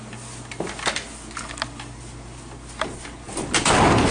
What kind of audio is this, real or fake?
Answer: real